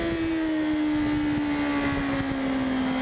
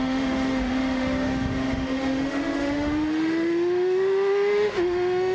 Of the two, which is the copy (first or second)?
second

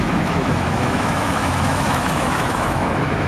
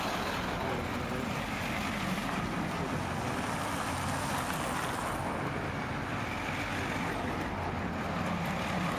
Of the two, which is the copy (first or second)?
first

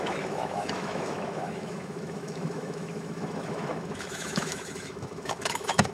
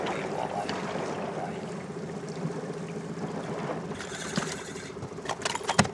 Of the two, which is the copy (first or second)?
first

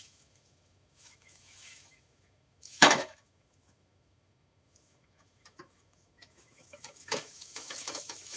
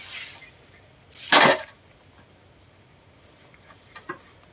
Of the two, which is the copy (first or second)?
first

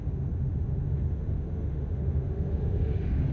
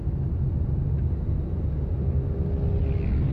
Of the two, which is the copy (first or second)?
first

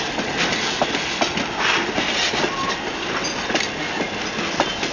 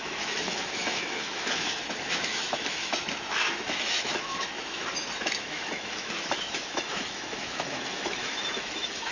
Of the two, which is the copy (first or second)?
second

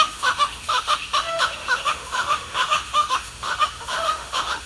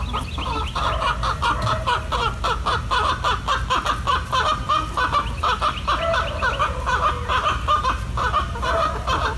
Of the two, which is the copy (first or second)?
first